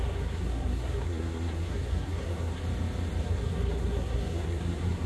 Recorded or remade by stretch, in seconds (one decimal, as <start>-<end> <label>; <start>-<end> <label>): 0.0-2.6 remade; 2.6-3.2 recorded; 3.2-5.1 remade

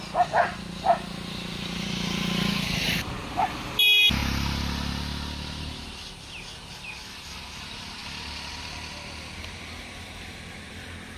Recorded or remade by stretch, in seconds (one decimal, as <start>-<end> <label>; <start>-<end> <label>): 0.0-11.2 recorded

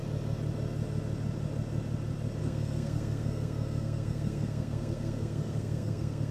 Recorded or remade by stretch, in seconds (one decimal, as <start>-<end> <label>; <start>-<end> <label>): 0.0-2.4 recorded; 2.4-6.3 remade

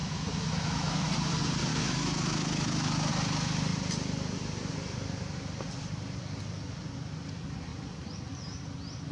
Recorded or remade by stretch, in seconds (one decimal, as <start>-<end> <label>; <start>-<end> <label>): 0.0-1.1 remade; 1.1-1.7 recorded; 1.7-3.1 remade; 3.1-9.1 recorded